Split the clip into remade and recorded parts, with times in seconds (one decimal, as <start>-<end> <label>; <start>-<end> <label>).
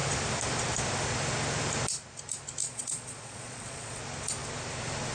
0.0-2.6 recorded; 2.6-4.0 remade; 4.0-5.1 recorded